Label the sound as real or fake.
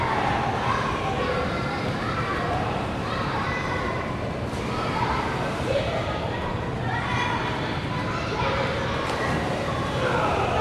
fake